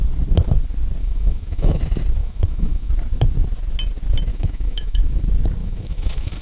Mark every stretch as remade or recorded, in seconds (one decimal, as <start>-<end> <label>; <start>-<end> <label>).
0.0-1.0 recorded; 1.0-1.8 remade; 1.8-2.2 recorded; 2.2-2.9 remade; 2.9-4.3 recorded; 4.3-5.0 remade; 5.0-5.6 recorded; 5.6-6.4 remade